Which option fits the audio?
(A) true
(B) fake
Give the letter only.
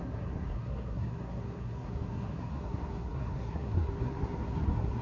B